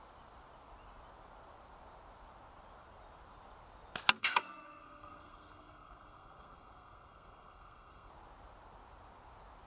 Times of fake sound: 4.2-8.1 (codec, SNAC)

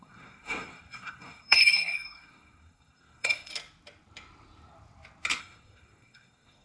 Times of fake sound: 0.0-3.5 (codec, SNAC); 5.4-6.6

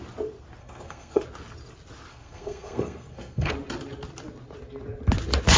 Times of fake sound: 0.6-1.2 (codec, SNAC); 2.1-3.5

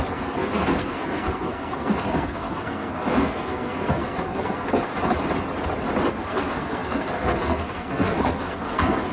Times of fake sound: 0.0-4.9 (codec, SNAC); 6.1-9.1

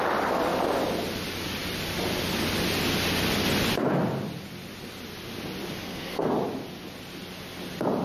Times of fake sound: 5.8-6.3 (codec, SNAC)